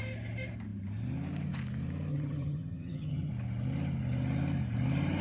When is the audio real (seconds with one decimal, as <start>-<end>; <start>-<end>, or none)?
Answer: 0.0-2.1; 3.3-5.2